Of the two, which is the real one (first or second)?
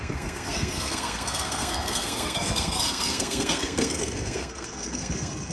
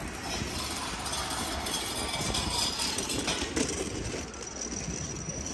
second